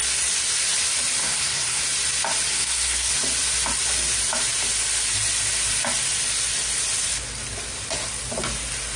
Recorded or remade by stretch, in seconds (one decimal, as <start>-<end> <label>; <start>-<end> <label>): 0.0-1.2 recorded; 1.2-1.8 remade; 1.8-2.5 recorded; 2.5-3.1 remade; 3.1-9.0 recorded